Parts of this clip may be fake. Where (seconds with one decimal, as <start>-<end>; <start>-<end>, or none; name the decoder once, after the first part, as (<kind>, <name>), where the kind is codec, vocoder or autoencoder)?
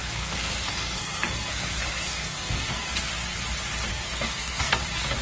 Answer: 0.0-3.1 (codec, SNAC); 3.9-4.8